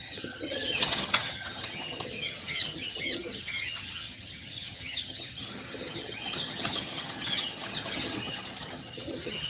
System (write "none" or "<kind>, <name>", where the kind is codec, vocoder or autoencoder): vocoder, HiFi-GAN